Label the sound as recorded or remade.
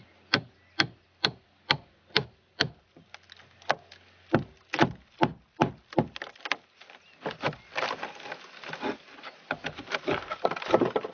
recorded